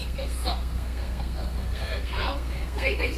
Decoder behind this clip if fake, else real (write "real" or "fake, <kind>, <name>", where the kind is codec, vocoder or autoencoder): fake, codec, SNAC